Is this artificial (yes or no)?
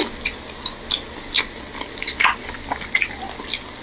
no